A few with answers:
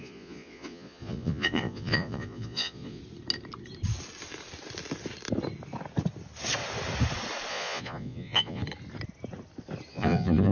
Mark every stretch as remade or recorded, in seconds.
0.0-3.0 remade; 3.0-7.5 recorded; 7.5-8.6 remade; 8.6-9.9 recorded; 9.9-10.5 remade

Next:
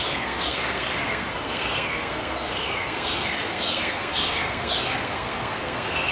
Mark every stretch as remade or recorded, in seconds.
0.0-6.1 remade

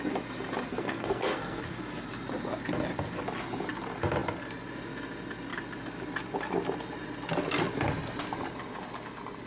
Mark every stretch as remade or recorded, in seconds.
0.0-0.7 recorded; 0.7-1.6 remade; 1.6-9.5 recorded

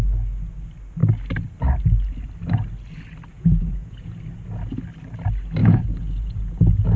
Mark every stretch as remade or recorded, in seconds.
0.0-3.3 recorded; 3.3-4.1 remade; 4.1-5.6 recorded; 5.6-7.0 remade

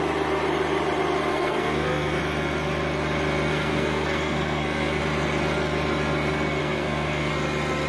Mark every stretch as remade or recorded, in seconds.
0.0-1.3 recorded; 1.3-2.2 remade; 2.2-3.5 recorded; 3.5-5.0 remade; 5.0-6.6 recorded; 6.6-7.3 remade; 7.3-7.9 recorded